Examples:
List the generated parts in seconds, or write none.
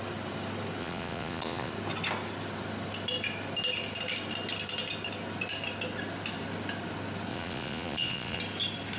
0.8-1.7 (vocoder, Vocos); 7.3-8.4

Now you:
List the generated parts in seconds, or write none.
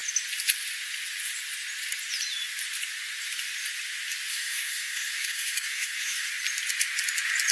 4.3-6.3 (codec, SNAC)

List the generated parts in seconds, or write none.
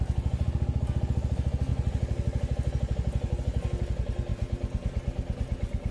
none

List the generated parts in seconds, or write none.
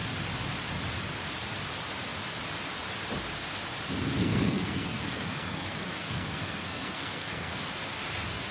4.2-7.6 (codec, SNAC)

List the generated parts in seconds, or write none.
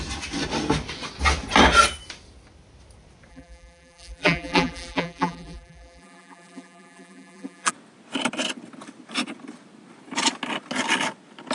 3.3-7.7 (vocoder, BigVGAN v2)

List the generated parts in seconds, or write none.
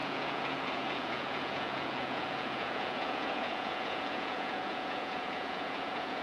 0.0-6.2 (vocoder, Vocos)